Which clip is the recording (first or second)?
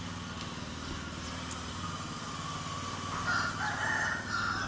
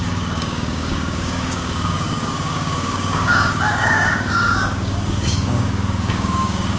first